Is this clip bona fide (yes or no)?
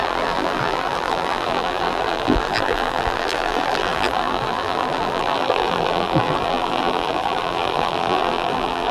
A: no